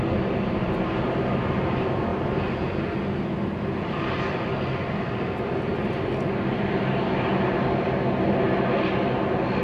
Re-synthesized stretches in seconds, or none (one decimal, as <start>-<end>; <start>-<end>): none